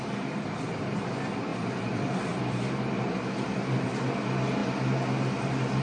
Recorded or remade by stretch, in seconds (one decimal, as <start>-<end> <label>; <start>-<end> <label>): 0.0-4.6 remade; 4.6-5.8 recorded